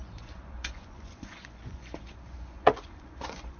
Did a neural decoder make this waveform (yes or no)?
yes